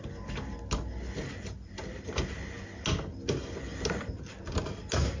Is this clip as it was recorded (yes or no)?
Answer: yes